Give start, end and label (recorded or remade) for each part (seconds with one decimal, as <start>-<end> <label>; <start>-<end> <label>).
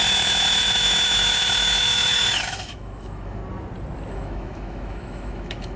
0.0-3.4 remade; 3.4-4.1 recorded; 4.1-5.8 remade